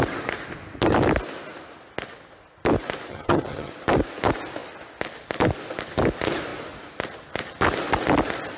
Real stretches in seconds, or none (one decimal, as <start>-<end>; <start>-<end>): 0.0-3.1; 3.7-8.6